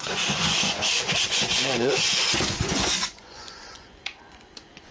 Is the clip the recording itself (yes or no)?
no